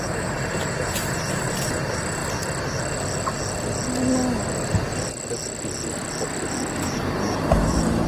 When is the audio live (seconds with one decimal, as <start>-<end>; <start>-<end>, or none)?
2.2-6.8